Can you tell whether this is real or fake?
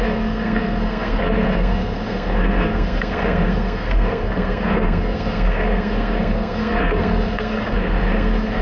fake